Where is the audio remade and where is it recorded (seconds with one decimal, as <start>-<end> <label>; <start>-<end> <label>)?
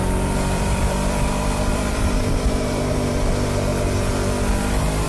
0.0-3.1 remade; 3.1-5.1 recorded